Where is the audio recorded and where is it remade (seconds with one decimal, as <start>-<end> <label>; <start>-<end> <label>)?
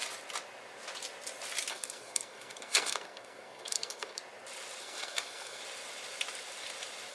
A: 0.0-1.7 recorded; 1.7-4.2 remade; 4.2-4.8 recorded; 4.8-5.6 remade; 5.6-7.1 recorded